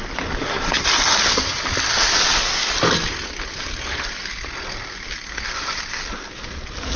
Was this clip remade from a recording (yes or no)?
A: no